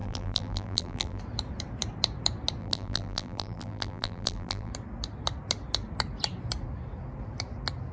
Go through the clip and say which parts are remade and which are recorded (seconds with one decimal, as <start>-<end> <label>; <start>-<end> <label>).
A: 0.0-1.2 remade; 1.2-2.6 recorded; 2.6-4.7 remade; 4.7-7.9 recorded